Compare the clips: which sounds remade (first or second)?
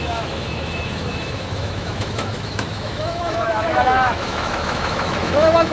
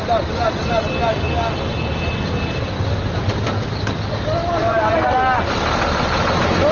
first